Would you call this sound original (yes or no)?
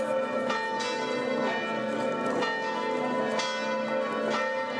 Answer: yes